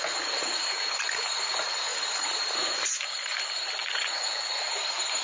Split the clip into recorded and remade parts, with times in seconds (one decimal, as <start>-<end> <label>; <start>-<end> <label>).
0.0-3.8 recorded; 3.8-4.6 remade; 4.6-5.2 recorded